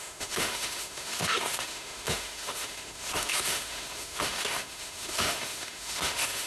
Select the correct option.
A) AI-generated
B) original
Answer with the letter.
A